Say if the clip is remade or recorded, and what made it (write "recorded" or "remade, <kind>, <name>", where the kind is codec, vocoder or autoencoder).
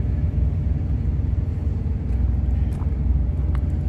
recorded